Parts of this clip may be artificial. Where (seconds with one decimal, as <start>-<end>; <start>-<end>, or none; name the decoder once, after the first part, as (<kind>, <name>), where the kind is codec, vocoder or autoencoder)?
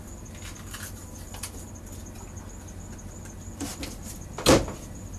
none